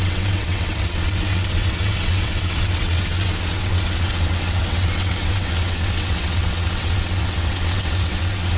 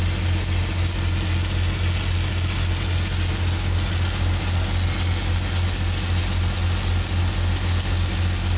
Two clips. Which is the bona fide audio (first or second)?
second